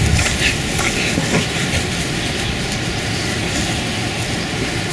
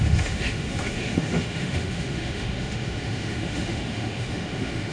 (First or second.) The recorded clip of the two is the first